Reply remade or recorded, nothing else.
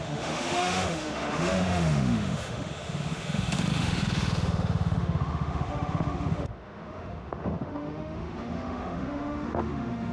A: remade